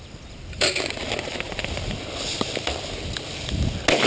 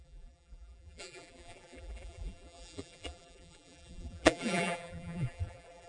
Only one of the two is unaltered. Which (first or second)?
first